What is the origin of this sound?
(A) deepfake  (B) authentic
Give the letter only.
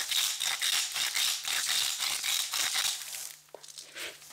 B